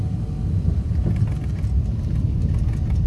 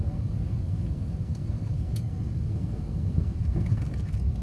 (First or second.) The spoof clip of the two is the second